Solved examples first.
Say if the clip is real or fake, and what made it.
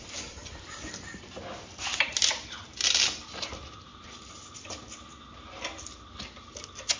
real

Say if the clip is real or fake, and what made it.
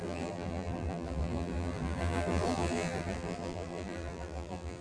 fake, vocoder, BigVGAN v2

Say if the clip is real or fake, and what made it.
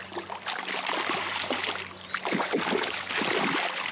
real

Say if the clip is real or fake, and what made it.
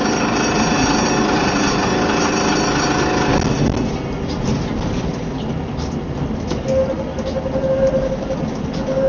real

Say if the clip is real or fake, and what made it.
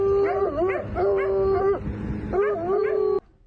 real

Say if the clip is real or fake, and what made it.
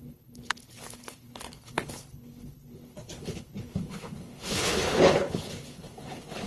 fake, codec, HILCodec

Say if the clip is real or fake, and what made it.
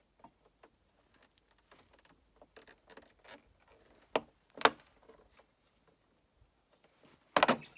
real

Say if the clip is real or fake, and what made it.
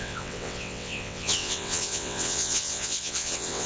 fake, vocoder, WaveNeXt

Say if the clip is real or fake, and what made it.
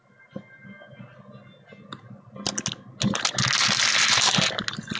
real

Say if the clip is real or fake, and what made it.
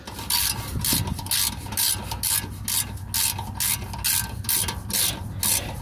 real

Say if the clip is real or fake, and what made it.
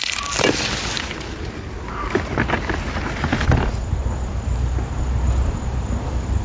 real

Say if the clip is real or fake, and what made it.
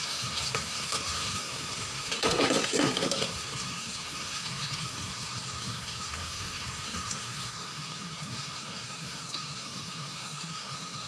fake, codec, SNAC